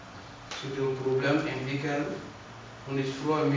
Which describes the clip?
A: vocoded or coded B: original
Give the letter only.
B